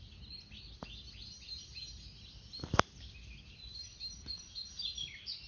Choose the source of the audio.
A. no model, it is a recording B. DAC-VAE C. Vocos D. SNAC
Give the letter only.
A